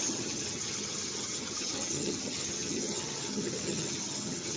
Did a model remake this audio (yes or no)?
yes